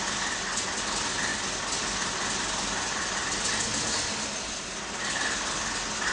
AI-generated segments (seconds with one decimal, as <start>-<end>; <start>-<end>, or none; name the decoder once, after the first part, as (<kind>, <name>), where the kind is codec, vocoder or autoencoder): none